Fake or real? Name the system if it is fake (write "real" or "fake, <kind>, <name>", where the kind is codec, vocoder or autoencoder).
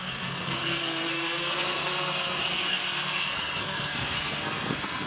fake, codec, SNAC